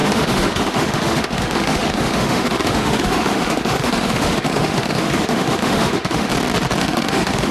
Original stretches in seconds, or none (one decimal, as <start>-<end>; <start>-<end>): 6.3-6.8